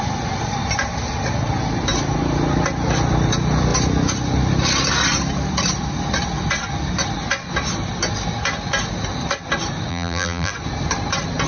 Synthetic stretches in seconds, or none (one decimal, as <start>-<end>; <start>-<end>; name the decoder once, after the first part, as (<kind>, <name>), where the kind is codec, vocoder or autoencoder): 9.9-10.5 (vocoder, BigVGAN v2)